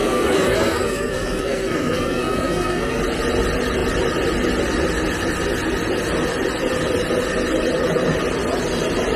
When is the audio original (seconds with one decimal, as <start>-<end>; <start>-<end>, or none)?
3.0-9.2